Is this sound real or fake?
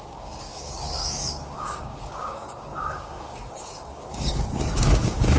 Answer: fake